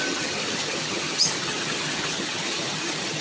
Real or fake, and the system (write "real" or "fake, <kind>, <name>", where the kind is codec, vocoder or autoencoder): fake, vocoder, HiFi-GAN